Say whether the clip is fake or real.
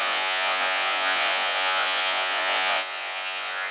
fake